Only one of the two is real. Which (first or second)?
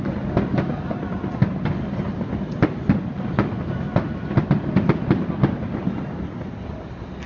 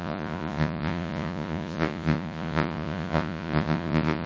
first